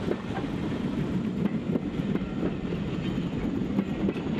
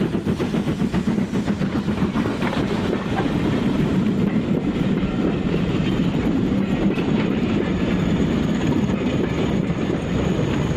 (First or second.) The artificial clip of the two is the second